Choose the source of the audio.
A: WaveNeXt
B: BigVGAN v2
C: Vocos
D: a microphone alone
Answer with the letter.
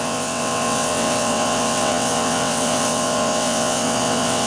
A